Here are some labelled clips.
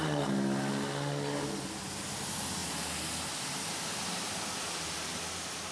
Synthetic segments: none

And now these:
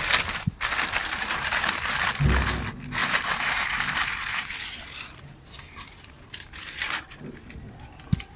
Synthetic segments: 1.0-1.9 (vocoder, BigVGAN v2); 3.0-7.1